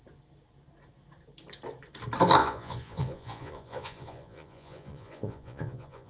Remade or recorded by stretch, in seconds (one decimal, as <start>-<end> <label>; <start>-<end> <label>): 0.0-2.4 recorded; 2.4-6.1 remade